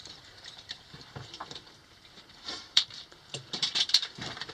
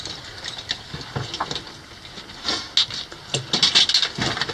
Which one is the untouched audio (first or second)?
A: second